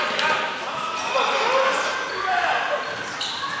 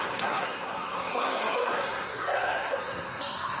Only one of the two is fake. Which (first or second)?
second